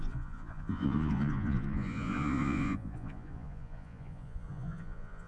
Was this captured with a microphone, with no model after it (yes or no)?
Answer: no